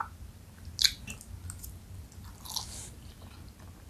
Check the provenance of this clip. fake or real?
real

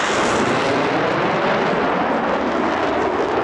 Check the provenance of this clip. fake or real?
real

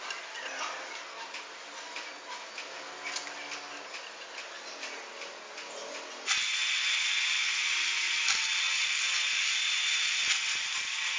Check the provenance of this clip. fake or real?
real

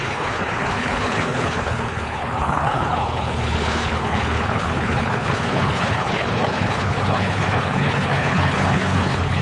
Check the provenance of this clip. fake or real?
fake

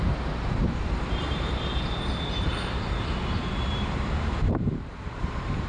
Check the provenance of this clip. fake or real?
fake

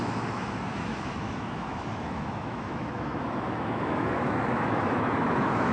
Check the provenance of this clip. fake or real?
fake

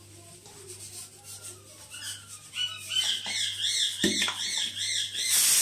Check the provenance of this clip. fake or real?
real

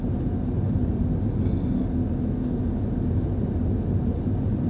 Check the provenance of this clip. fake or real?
real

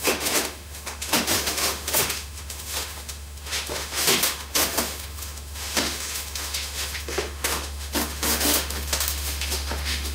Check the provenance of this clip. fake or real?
fake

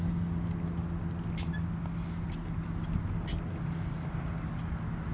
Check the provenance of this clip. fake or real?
real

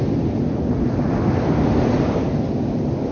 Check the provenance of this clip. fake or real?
real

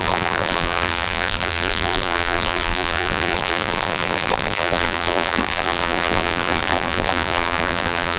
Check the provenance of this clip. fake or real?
fake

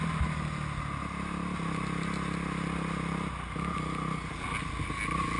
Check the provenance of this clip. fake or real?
real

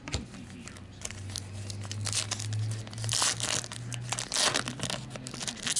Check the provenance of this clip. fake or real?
real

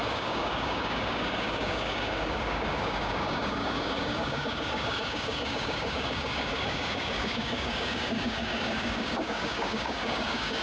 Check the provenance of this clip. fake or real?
fake